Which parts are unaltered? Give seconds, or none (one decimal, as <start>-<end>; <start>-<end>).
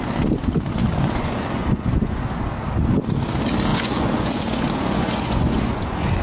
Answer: 0.0-0.8; 2.2-3.7